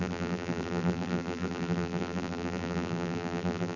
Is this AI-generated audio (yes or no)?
yes